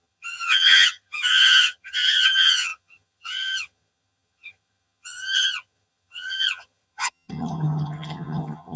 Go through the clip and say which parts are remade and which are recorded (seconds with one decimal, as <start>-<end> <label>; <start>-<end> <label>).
0.0-8.8 remade